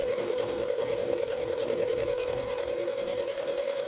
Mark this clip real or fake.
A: fake